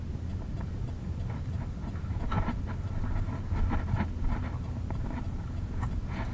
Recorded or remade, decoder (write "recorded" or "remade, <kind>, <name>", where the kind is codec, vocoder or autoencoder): recorded